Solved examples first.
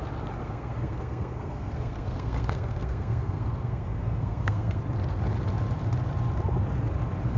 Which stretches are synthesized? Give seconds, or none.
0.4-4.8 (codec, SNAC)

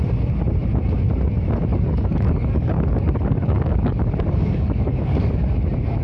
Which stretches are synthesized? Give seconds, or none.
1.7-5.3 (codec, DAC)

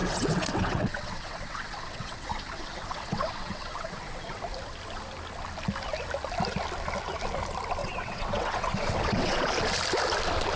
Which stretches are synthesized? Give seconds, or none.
0.0-4.4 (vocoder, WaveNeXt); 7.8-9.5